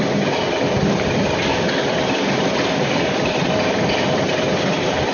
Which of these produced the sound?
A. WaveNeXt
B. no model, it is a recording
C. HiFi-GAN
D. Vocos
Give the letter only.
B